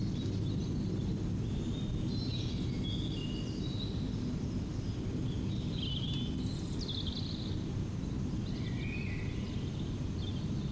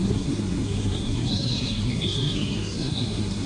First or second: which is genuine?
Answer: first